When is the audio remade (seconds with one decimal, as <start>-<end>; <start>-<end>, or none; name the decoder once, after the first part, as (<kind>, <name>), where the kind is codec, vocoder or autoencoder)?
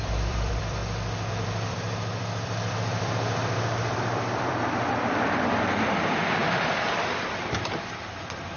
0.0-0.8 (vocoder, BigVGAN v2); 1.3-8.6